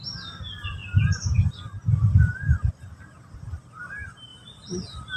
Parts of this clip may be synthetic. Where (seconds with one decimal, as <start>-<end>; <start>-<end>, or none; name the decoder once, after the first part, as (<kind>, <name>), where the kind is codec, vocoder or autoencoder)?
none